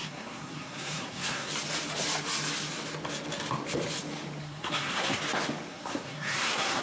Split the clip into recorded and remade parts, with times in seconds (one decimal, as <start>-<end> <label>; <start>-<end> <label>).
0.0-1.5 remade; 1.5-4.4 recorded; 4.4-5.2 remade; 5.2-5.7 recorded; 5.7-6.8 remade